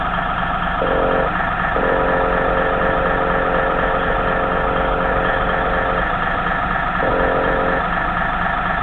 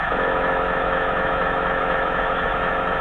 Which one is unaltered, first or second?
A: first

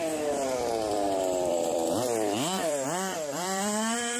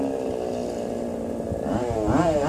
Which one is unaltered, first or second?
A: second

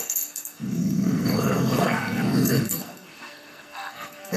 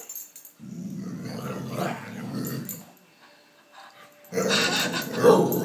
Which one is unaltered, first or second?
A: second